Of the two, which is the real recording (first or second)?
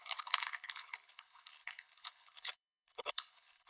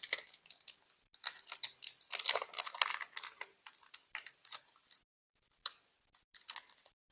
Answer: second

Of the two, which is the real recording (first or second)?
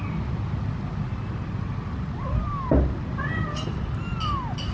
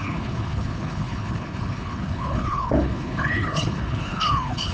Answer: first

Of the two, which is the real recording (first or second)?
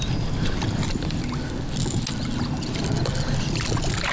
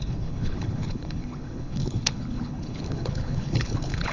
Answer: first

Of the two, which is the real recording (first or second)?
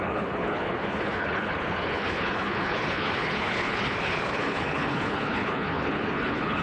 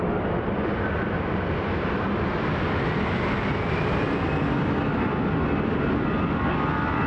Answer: second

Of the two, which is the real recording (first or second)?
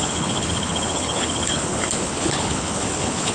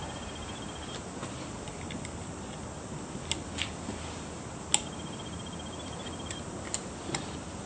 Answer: second